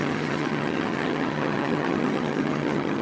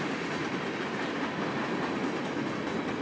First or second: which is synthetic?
first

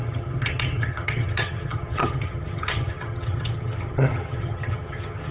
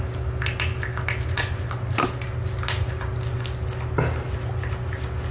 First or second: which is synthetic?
first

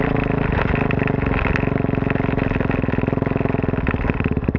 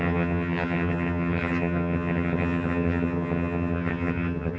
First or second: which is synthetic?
second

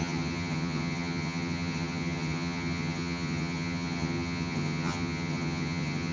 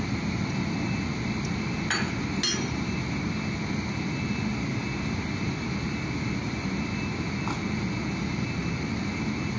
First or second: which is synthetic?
first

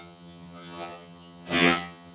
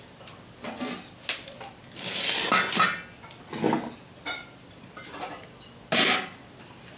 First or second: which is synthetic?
first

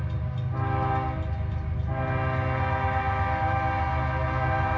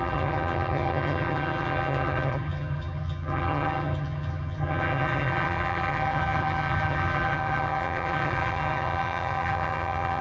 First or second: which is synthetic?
second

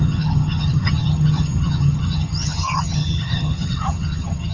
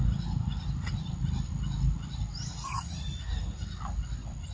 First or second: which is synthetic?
first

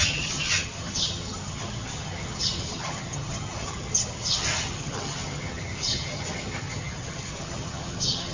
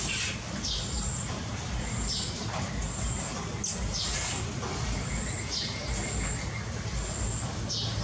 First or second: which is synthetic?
first